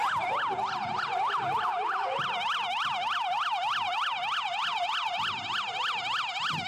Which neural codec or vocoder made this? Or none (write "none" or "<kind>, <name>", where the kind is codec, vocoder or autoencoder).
none